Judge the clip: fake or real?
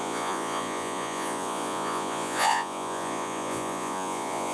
fake